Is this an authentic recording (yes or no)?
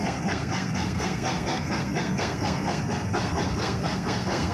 no